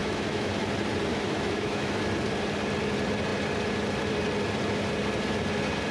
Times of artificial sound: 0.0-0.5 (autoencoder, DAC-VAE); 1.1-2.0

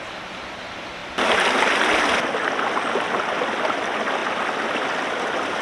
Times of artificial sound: none